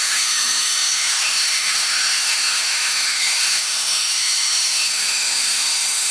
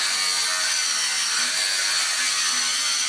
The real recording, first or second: second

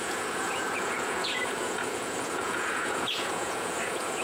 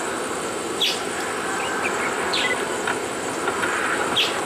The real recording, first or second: second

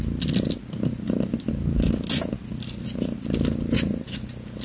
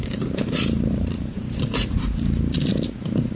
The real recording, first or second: first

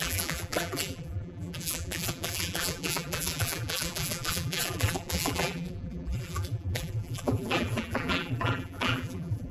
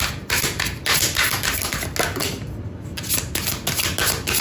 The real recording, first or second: second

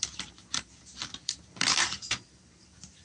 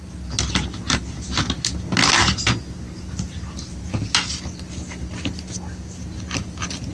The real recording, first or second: second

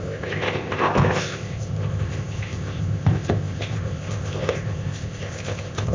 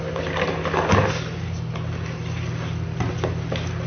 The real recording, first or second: second